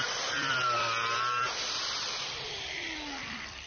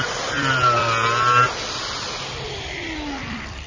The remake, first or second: first